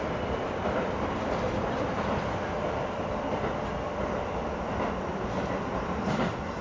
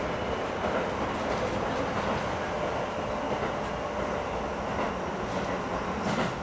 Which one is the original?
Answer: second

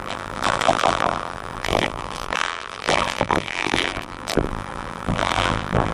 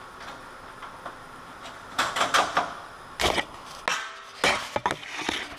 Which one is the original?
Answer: second